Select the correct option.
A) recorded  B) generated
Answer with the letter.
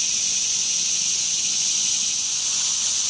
B